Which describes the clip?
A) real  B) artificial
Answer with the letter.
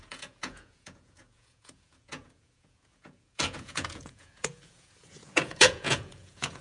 B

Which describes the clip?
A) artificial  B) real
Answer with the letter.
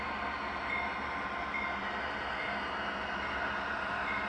B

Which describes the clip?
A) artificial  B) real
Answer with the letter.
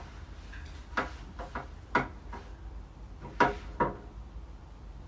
B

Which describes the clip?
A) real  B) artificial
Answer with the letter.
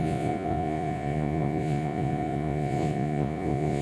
B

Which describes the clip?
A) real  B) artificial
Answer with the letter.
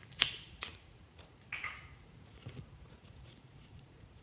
B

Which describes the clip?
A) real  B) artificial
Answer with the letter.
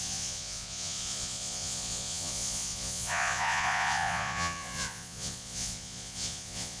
B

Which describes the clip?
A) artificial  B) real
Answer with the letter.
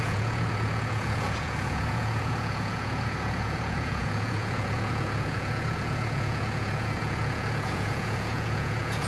A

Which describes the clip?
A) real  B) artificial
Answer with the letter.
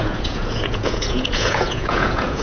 B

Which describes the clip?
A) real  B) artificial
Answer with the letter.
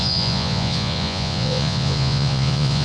B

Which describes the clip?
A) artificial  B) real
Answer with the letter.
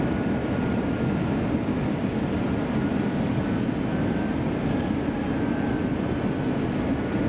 B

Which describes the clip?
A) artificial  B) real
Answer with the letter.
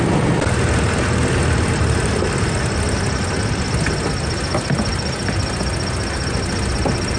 B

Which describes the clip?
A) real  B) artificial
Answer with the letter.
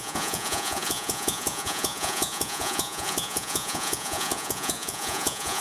B